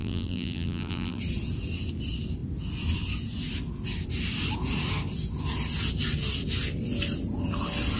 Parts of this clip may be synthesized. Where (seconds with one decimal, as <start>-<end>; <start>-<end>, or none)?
0.0-1.2